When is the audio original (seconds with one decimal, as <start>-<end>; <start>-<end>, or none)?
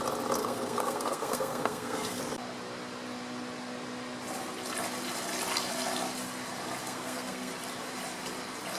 0.0-0.4; 2.2-6.8; 7.5-8.8